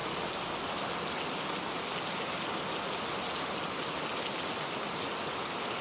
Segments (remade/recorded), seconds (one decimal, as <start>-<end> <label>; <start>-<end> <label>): 0.0-5.8 recorded